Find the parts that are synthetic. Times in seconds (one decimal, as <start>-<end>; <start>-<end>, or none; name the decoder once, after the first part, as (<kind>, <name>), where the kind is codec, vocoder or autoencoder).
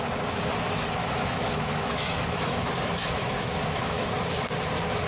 1.0-4.1 (autoencoder, DAC-VAE)